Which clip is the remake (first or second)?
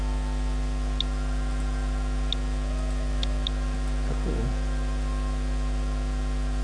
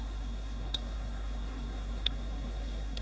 second